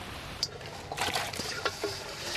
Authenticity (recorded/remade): remade